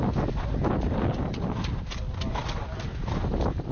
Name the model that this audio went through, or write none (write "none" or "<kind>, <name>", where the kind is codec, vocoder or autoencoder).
none